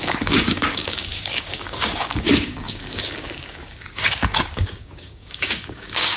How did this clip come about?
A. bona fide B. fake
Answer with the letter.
B